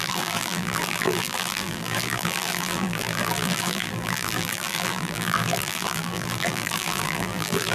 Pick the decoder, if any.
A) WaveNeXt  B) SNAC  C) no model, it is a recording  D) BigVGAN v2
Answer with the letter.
D